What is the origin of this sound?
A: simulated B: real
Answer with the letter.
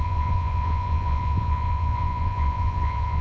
A